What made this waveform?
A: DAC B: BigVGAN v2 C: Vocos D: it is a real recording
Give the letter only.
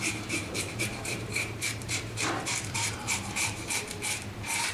B